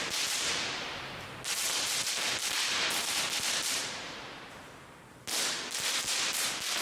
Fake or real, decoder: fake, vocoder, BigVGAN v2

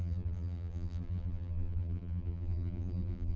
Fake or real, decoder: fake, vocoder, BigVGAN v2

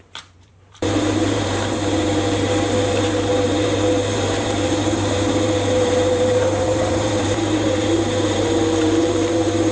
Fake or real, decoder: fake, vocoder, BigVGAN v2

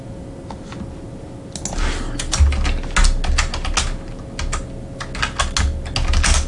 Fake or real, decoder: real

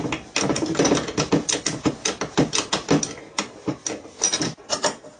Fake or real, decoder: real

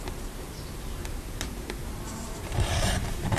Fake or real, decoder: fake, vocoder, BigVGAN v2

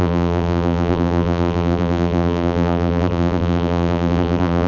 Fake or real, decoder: fake, vocoder, BigVGAN v2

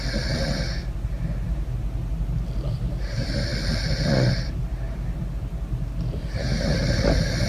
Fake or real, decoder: fake, vocoder, BigVGAN v2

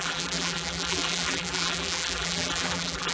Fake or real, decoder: fake, vocoder, BigVGAN v2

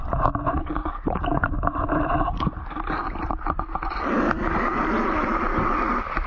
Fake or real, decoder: fake, vocoder, BigVGAN v2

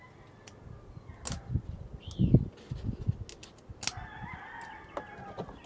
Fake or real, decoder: real